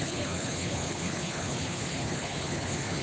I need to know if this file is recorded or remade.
remade